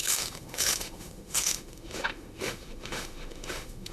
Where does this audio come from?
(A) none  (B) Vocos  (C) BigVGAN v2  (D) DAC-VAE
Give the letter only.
D